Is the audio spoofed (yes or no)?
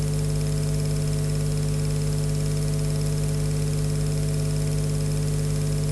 no